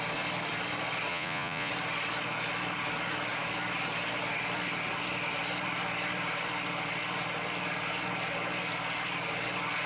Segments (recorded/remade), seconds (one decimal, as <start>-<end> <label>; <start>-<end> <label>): 0.0-1.1 recorded; 1.1-1.7 remade; 1.7-9.9 recorded